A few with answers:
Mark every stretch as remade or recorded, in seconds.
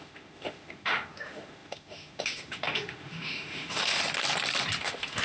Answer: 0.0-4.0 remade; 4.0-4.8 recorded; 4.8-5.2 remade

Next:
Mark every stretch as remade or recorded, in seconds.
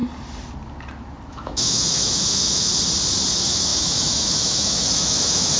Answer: 0.0-1.3 recorded; 1.3-2.7 remade; 2.7-3.3 recorded; 3.3-5.6 remade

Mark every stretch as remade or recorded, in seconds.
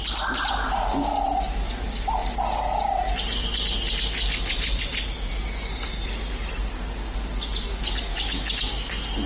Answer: 0.0-8.1 recorded; 8.1-8.9 remade; 8.9-9.3 recorded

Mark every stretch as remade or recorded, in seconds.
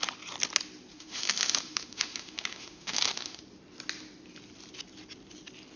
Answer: 0.0-0.9 recorded; 0.9-3.4 remade; 3.4-5.8 recorded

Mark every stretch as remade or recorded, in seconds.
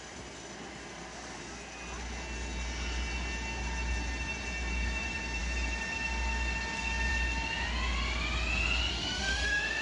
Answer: 0.0-8.9 recorded; 8.9-9.8 remade